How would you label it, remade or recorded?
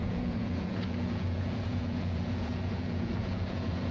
remade